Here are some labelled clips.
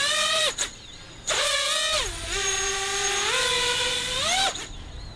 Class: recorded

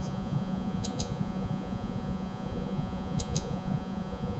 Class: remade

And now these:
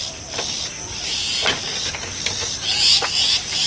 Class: recorded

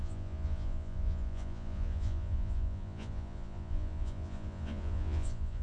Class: remade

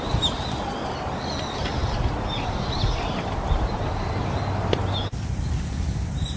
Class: recorded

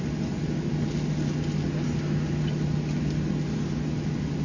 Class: recorded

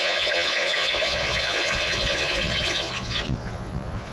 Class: remade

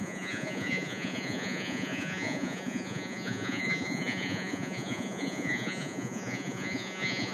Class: remade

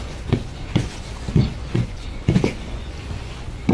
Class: remade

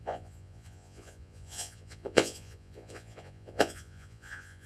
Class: remade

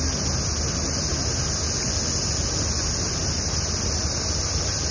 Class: recorded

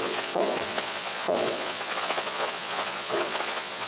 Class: remade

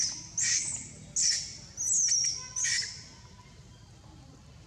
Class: recorded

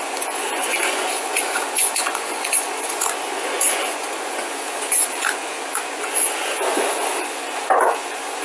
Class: remade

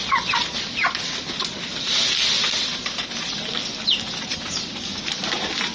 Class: recorded